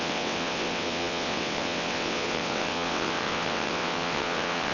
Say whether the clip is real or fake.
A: fake